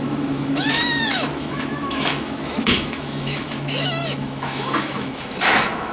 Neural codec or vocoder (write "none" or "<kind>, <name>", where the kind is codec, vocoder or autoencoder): autoencoder, DAC-VAE